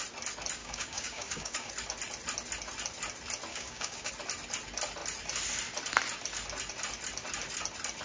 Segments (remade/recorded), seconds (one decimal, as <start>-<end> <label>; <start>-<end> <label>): 0.0-0.6 recorded; 0.6-1.7 remade; 1.7-3.5 recorded; 3.5-4.1 remade; 4.1-8.0 recorded